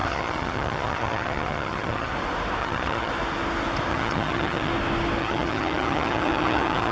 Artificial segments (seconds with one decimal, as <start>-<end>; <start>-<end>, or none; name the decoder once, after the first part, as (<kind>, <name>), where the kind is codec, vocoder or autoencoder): 0.0-2.1 (vocoder, HiFi-GAN); 2.6-3.1; 3.9-4.7; 5.2-6.9